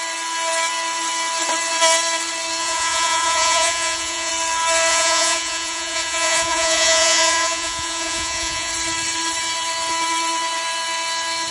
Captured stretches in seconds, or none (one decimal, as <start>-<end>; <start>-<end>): 0.0-2.6; 4.3-4.9; 8.7-11.5